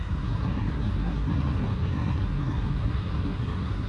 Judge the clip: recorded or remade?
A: remade